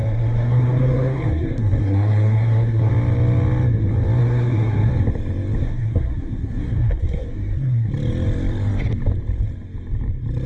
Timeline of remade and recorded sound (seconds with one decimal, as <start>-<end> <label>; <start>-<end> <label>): 0.0-2.9 remade; 2.9-4.2 recorded; 4.2-4.9 remade; 4.9-5.6 recorded; 5.6-7.9 remade; 7.9-10.5 recorded